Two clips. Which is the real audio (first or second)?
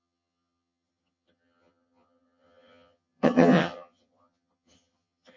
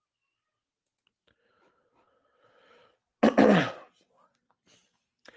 second